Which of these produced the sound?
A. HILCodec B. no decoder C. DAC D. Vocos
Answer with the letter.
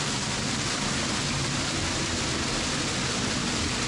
B